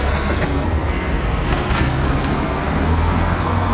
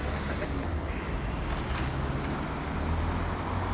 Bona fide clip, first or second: second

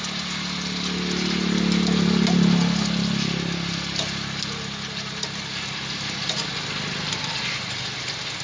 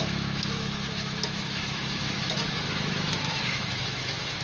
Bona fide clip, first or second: first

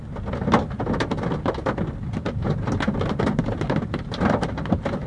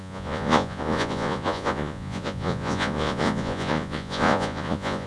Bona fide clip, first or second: first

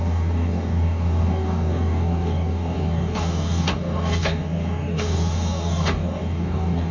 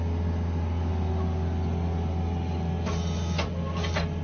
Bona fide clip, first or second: second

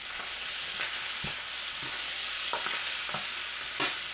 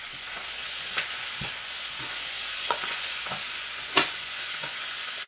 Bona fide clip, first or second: first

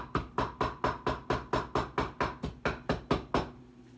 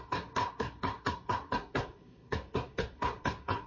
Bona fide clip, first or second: first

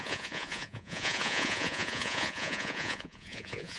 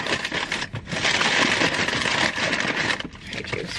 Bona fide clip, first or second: second